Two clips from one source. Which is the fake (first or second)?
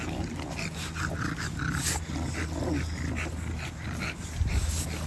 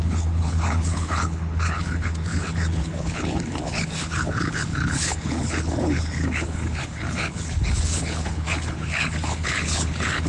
second